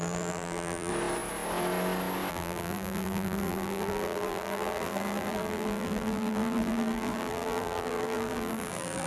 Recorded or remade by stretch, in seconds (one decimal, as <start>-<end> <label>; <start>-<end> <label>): 0.0-0.9 remade; 0.9-2.3 recorded; 2.3-9.1 remade